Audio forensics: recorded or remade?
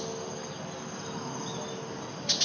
recorded